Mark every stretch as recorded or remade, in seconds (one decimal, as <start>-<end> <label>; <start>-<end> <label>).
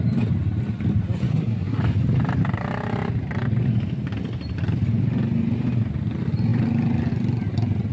0.0-1.3 recorded; 1.3-1.8 remade; 1.8-7.9 recorded